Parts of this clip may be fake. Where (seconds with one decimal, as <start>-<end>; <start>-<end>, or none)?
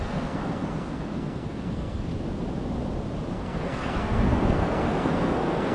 0.0-2.1; 3.3-5.7